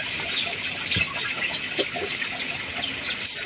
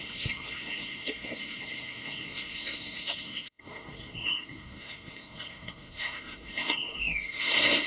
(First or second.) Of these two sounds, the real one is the first